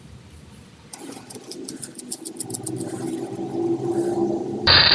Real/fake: fake